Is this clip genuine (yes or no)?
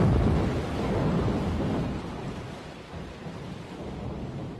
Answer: yes